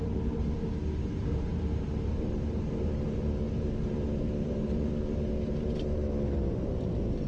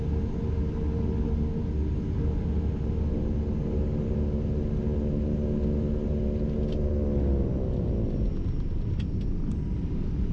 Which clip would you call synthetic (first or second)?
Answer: first